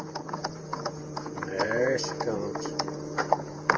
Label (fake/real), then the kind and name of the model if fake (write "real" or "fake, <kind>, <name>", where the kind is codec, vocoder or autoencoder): fake, vocoder, Vocos